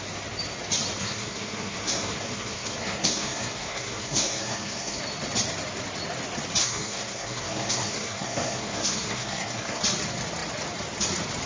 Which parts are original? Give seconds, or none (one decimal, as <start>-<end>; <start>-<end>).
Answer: 0.0-1.0; 5.0-6.6; 9.8-11.5